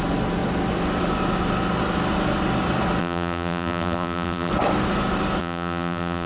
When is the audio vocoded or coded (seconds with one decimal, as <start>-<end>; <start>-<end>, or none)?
3.0-4.5; 5.4-6.3